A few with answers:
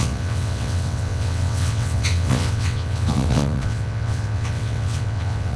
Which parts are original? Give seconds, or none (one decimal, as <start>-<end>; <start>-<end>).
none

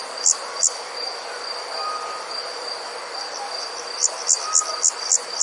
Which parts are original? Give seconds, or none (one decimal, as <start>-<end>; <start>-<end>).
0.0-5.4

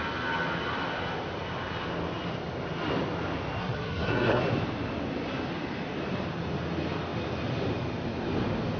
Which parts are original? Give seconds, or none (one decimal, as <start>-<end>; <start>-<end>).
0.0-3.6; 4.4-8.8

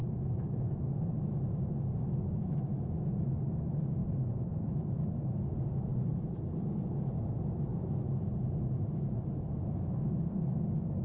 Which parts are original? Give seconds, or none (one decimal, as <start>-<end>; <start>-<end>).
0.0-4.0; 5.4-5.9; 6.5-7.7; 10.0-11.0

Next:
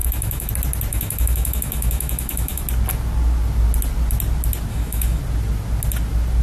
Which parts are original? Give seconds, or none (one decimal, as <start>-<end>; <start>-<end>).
0.5-0.9; 2.6-4.7; 5.2-6.4